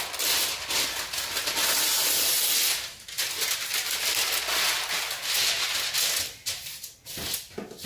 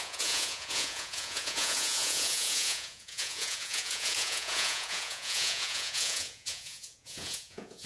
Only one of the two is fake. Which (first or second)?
second